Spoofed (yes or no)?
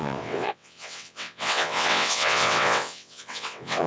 yes